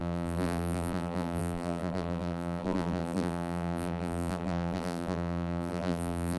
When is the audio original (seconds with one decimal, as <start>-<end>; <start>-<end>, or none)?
none